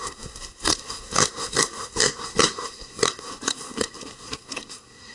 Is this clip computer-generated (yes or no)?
yes